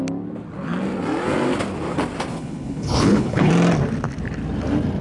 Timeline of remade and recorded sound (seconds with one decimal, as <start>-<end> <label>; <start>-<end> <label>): 0.0-2.3 recorded; 2.3-3.5 remade; 3.5-5.0 recorded